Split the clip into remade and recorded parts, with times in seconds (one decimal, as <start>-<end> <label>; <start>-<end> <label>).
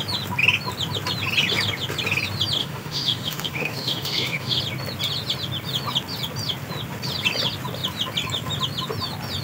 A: 0.0-2.6 recorded; 2.6-4.6 remade; 4.6-9.4 recorded